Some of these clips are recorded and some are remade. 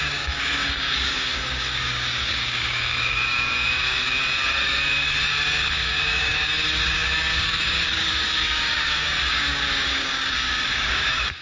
remade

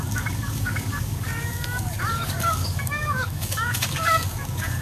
remade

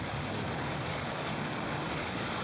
remade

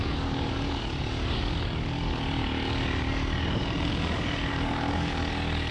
remade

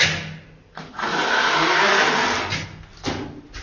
recorded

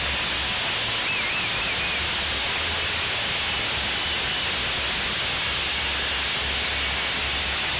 recorded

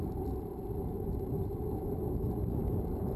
recorded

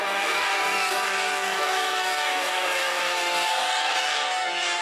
remade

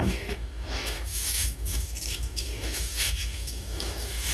remade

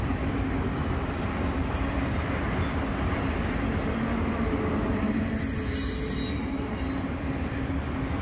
recorded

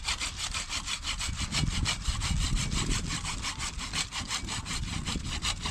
recorded